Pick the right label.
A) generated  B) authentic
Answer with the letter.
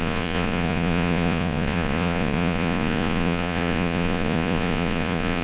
A